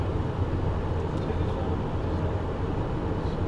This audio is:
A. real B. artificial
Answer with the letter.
A